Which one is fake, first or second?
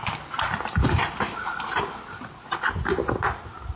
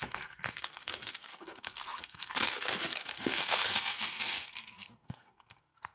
second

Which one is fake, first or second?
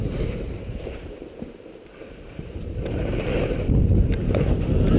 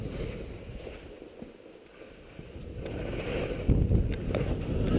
first